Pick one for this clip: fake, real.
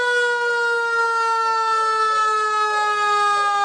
real